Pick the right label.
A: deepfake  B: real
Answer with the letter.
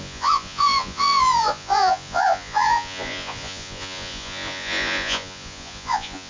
A